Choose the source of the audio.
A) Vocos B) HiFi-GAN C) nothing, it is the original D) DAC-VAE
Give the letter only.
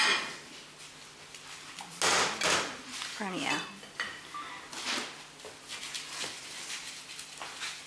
C